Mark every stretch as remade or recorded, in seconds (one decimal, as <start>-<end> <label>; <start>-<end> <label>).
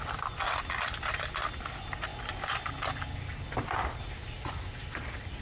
0.0-5.4 recorded